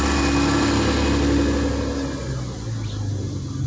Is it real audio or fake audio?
real